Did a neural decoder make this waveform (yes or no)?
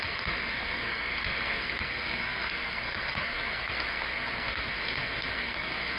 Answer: yes